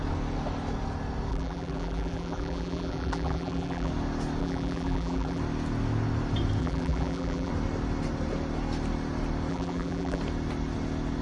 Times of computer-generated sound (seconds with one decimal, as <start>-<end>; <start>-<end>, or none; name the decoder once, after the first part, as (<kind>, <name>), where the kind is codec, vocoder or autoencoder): 1.3-3.9 (vocoder, BigVGAN v2); 4.4-5.4; 6.6-7.5; 9.5-10.2